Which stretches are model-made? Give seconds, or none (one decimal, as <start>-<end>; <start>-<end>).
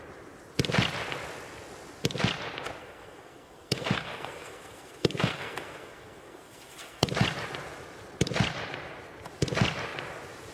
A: 2.8-7.1